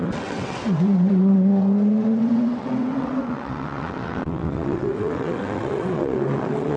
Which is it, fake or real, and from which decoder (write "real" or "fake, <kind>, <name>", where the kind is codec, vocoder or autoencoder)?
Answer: fake, vocoder, WaveNeXt